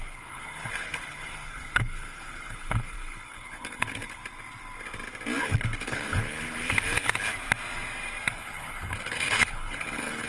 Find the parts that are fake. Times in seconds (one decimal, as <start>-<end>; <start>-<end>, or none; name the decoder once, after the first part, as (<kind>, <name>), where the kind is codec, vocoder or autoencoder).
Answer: 0.0-4.2 (codec, HILCodec); 5.4-7.3; 8.3-10.3